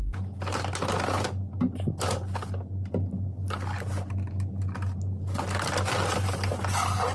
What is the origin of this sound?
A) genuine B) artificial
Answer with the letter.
A